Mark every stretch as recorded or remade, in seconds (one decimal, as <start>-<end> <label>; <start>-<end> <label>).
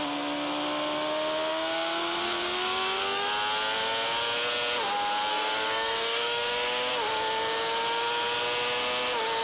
0.0-1.5 recorded; 1.5-3.3 remade; 3.3-5.3 recorded; 5.3-6.9 remade; 6.9-9.4 recorded